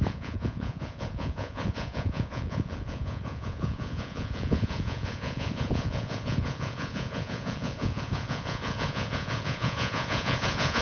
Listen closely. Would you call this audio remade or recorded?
remade